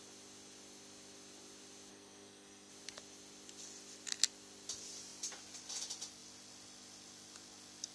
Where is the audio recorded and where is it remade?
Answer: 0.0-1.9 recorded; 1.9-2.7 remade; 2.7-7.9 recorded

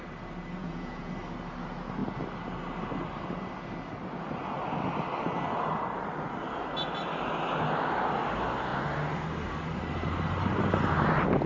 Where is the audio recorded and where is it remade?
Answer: 0.0-0.6 recorded; 0.6-1.1 remade; 1.1-11.5 recorded

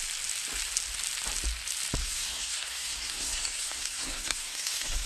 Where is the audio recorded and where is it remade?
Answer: 0.0-2.0 recorded; 2.0-5.1 remade

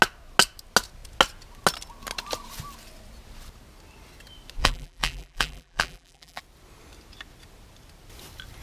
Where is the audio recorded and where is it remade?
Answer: 0.0-4.6 recorded; 4.6-6.4 remade; 6.4-8.6 recorded

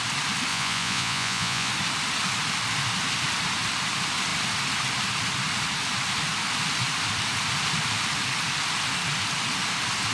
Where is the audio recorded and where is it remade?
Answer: 0.0-0.5 recorded; 0.5-1.7 remade; 1.7-10.1 recorded